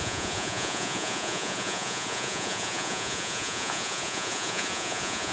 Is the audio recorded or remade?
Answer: remade